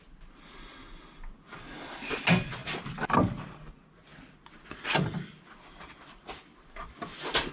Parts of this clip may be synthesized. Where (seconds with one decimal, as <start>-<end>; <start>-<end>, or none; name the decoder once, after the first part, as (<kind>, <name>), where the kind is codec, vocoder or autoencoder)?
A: none